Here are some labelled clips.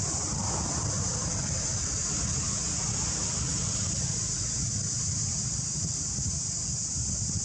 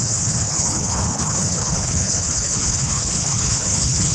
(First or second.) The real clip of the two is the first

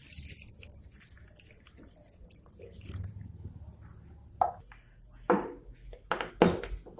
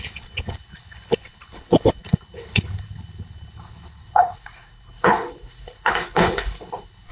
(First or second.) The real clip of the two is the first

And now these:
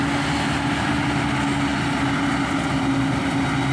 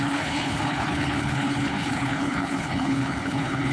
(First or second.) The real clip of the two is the first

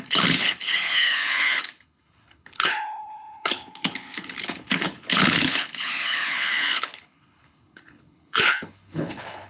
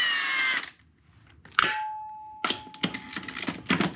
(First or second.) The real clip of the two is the second